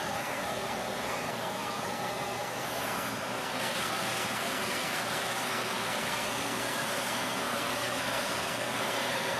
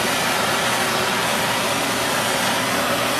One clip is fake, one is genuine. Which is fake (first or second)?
first